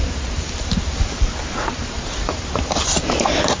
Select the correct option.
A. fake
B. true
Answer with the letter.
A